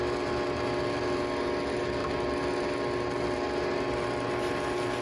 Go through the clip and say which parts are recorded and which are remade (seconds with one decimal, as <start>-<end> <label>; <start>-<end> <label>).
0.0-5.0 recorded